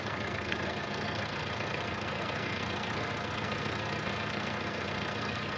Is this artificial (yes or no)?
yes